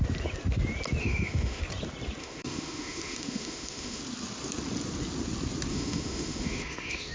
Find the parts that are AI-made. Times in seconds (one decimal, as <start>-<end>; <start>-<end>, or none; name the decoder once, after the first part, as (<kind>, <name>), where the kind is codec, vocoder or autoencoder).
1.0-1.6 (autoencoder, DAC-VAE); 2.2-4.0; 5.7-7.1